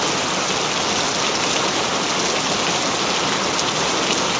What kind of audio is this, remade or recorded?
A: recorded